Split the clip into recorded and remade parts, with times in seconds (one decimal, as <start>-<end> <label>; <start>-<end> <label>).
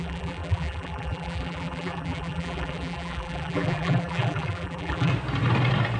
0.0-5.1 remade; 5.1-6.0 recorded